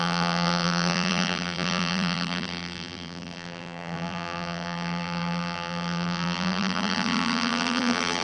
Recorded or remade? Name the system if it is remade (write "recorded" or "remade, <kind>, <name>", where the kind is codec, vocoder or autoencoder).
remade, vocoder, BigVGAN v2